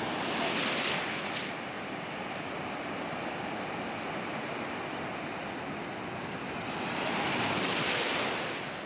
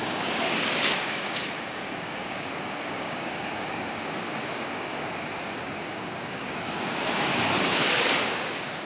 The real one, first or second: first